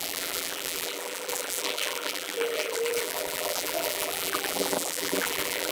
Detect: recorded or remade remade